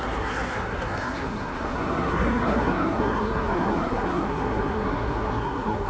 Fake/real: fake